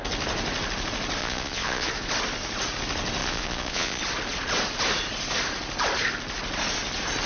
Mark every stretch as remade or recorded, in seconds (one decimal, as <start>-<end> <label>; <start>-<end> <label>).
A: 0.0-1.2 recorded; 1.2-1.9 remade; 1.9-3.2 recorded; 3.2-4.0 remade; 4.0-7.3 recorded

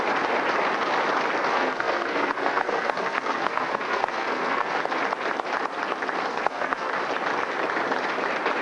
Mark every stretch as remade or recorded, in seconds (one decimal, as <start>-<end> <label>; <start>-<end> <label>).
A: 0.0-1.5 recorded; 1.5-4.8 remade; 4.8-6.3 recorded; 6.3-6.9 remade; 6.9-8.6 recorded

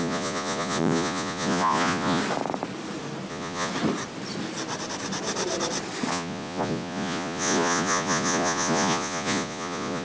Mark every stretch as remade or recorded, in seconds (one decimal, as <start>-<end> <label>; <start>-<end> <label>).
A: 0.0-2.2 remade; 2.2-3.3 recorded; 3.3-3.7 remade; 3.7-6.1 recorded; 6.1-10.0 remade

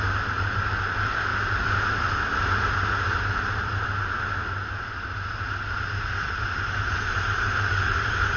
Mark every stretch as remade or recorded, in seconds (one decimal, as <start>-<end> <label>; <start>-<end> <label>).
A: 0.0-8.4 recorded

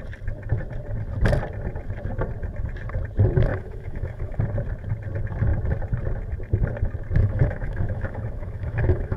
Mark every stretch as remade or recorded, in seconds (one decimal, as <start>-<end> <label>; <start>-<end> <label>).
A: 0.0-3.5 recorded; 3.5-4.4 remade; 4.4-7.2 recorded; 7.2-9.2 remade